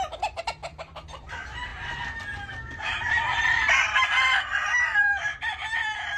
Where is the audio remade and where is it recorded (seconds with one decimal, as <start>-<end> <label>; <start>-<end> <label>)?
0.0-1.7 remade; 1.7-2.8 recorded; 2.8-6.2 remade